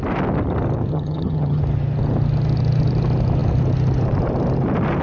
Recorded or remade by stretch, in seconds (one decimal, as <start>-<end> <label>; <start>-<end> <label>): 0.0-0.9 recorded; 0.9-1.6 remade; 1.6-5.0 recorded